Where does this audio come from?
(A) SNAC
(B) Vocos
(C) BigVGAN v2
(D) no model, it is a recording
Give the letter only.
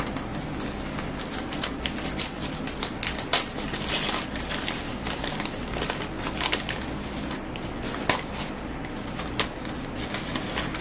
D